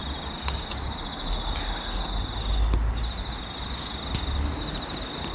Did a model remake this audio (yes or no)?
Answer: no